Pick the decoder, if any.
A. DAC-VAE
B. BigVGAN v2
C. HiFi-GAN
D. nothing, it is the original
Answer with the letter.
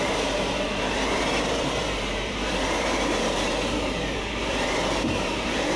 B